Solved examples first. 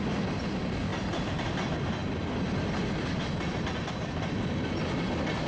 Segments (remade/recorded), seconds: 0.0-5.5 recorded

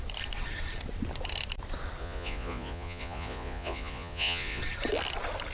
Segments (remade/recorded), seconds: 0.0-2.0 recorded; 2.0-4.6 remade; 4.6-5.5 recorded